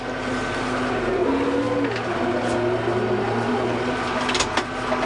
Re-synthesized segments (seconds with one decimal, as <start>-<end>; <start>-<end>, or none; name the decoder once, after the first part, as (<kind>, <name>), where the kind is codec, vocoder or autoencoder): none